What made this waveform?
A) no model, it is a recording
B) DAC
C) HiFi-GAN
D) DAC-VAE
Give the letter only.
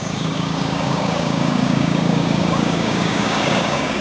B